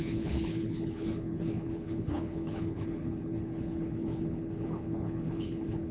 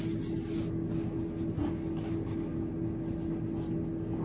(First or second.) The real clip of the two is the second